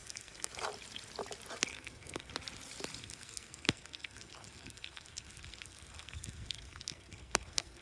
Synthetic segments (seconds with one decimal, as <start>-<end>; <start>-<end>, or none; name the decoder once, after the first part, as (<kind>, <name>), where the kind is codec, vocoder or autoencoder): 0.0-0.5 (codec, SNAC); 1.7-2.3; 3.0-7.8